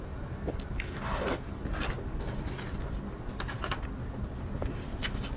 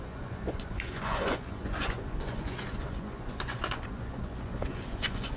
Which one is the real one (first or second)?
first